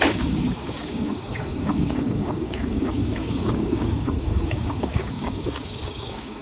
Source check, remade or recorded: remade